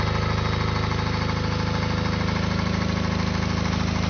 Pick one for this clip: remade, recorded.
recorded